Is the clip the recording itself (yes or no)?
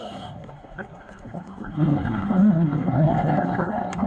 no